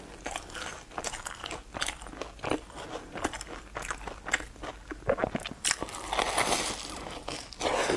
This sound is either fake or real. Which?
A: real